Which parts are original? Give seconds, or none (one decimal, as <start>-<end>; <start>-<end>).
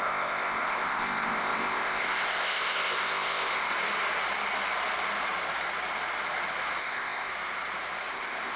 3.7-6.8; 7.3-8.1